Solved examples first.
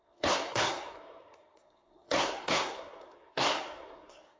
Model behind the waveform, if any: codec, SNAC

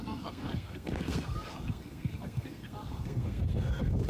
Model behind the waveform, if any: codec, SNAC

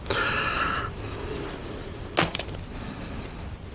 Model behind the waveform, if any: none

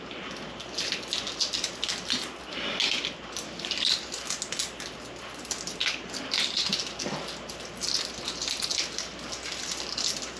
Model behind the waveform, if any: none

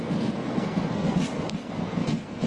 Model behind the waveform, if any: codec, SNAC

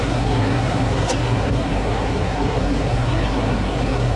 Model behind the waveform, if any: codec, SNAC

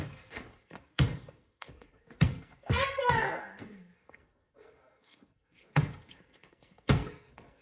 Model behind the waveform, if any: codec, SNAC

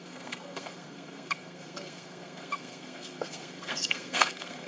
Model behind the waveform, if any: codec, SNAC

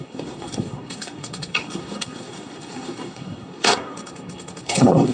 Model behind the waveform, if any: codec, SNAC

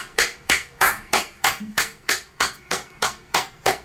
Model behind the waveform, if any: codec, SNAC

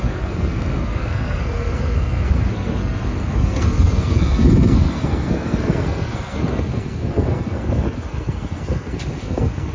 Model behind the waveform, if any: codec, SNAC